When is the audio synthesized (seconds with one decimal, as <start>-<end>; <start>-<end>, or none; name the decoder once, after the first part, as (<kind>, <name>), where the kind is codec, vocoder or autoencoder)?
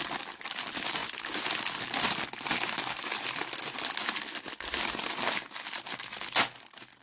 none